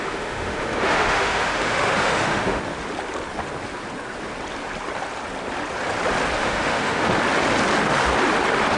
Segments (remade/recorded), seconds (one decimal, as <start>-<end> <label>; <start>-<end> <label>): 0.0-2.6 remade; 2.6-6.4 recorded; 6.4-7.1 remade; 7.1-8.8 recorded